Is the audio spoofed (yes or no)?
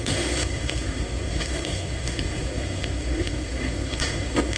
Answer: yes